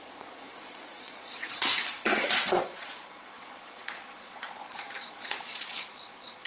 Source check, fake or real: fake